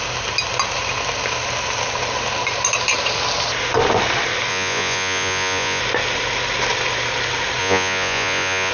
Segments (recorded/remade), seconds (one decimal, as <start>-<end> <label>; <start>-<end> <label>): 0.0-4.5 recorded; 4.5-5.8 remade; 5.8-7.6 recorded; 7.6-8.7 remade